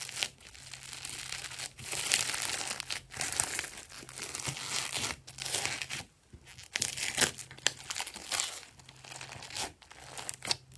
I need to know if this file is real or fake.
real